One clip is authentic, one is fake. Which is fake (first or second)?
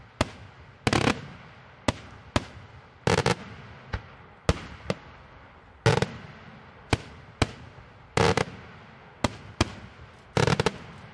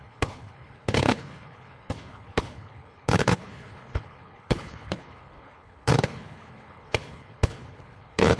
second